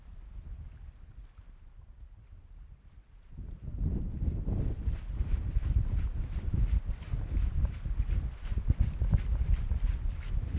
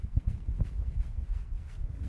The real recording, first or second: first